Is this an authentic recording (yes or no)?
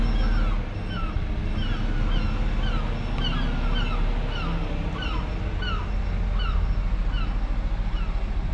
yes